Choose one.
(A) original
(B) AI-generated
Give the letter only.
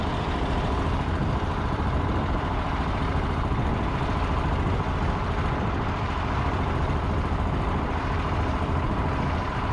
B